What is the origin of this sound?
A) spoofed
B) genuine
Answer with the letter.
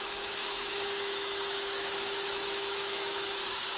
A